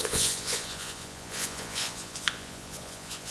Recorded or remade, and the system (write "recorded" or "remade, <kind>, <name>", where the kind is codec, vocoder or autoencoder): remade, vocoder, Vocos